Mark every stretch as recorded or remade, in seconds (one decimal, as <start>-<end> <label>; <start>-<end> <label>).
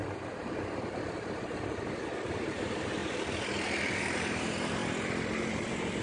0.0-3.0 remade; 3.0-3.9 recorded; 3.9-4.8 remade; 4.8-5.5 recorded; 5.5-6.0 remade